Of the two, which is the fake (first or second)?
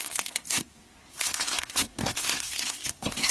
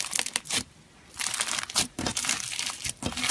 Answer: first